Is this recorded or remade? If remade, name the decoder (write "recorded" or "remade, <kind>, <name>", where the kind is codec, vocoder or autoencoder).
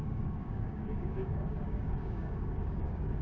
remade, codec, DAC